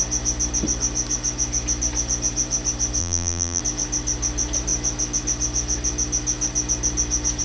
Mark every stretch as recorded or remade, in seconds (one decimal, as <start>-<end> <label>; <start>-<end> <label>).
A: 0.0-3.0 recorded; 3.0-3.6 remade; 3.6-7.4 recorded